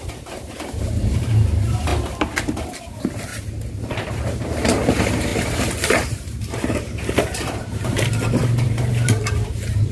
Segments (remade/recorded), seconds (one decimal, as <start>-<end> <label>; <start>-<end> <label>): 0.0-1.9 remade; 1.9-2.7 recorded; 2.7-3.3 remade; 3.3-4.1 recorded; 4.1-9.9 remade